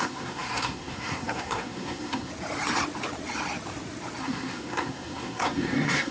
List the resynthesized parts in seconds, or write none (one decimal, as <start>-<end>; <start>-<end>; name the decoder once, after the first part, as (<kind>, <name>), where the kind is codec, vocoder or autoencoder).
0.0-2.3 (codec, SNAC); 4.2-6.1